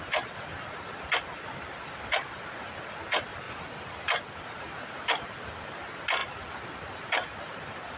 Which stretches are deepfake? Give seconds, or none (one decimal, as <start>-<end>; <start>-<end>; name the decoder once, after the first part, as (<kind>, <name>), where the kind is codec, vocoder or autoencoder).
none